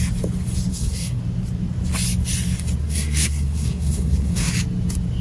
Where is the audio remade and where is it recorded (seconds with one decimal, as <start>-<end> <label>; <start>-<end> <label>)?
0.0-0.7 recorded; 0.7-1.2 remade; 1.2-2.8 recorded; 2.8-4.5 remade; 4.5-5.2 recorded